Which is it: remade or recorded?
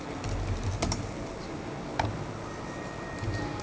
recorded